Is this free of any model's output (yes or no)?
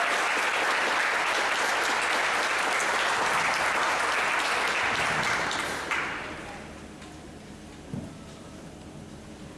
yes